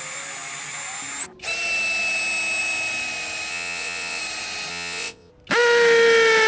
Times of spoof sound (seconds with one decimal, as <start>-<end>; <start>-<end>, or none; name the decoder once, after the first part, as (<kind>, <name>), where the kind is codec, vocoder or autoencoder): 3.5-4.2 (vocoder, WaveNeXt); 4.7-5.3